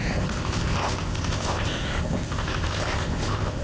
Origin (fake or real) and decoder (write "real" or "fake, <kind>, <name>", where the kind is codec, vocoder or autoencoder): fake, codec, ZipCodec